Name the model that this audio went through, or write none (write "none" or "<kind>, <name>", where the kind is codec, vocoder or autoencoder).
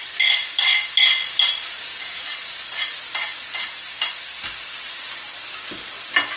none